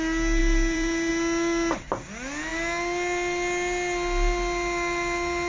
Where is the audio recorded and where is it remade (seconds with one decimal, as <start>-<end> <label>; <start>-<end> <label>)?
0.0-0.4 recorded; 0.4-1.1 remade; 1.1-5.5 recorded